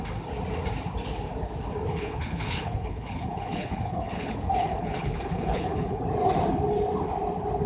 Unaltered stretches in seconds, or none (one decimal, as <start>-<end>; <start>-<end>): 0.0-1.9; 6.0-7.7